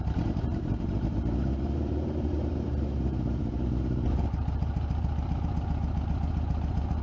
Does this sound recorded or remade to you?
remade